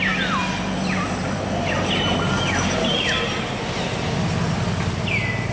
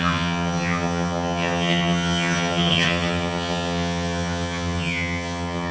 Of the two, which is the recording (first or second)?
first